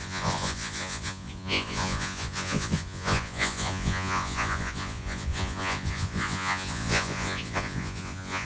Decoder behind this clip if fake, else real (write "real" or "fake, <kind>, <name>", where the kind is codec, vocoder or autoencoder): fake, vocoder, Vocos